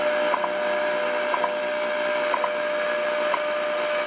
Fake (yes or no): no